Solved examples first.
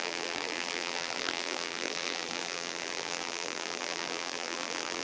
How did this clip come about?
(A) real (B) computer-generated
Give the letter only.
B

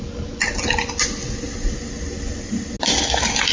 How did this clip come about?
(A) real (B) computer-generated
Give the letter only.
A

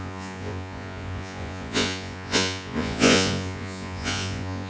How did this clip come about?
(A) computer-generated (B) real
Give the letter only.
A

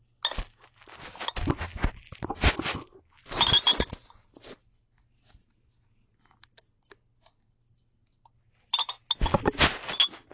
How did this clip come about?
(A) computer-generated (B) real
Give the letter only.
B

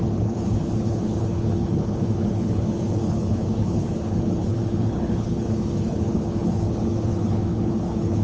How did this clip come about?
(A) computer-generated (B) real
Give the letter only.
A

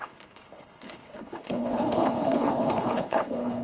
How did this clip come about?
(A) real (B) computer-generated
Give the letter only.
B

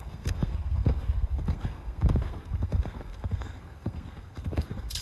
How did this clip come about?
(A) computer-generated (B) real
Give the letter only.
A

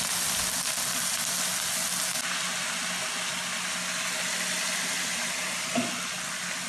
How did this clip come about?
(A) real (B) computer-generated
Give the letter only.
A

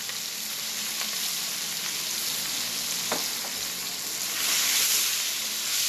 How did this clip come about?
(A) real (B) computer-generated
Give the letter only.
A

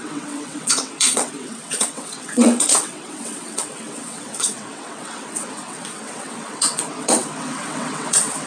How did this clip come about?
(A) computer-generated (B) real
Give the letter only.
A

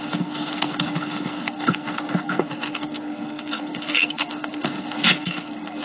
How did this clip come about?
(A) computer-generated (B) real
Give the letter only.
A